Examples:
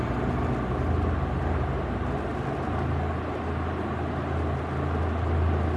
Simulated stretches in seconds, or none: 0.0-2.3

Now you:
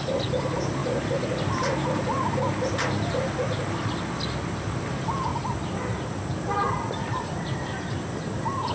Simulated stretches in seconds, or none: 0.8-2.2; 5.3-8.7

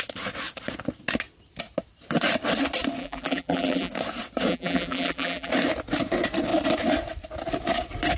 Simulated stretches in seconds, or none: 3.0-3.9; 4.5-5.5

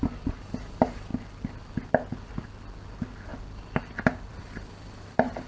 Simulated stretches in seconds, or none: none

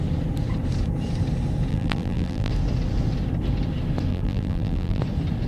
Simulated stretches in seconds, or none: 1.7-2.5; 4.1-5.0

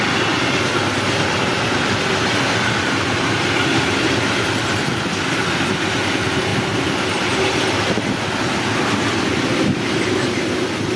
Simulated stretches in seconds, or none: none

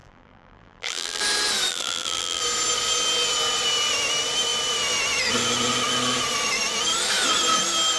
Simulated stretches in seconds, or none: 0.0-1.2; 1.7-2.4

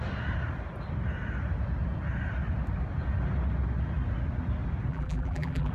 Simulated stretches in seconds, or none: 4.9-5.7